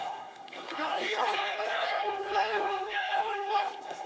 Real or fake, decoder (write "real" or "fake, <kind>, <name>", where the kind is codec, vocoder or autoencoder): fake, codec, SNAC